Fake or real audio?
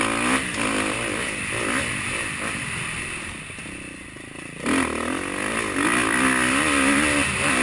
real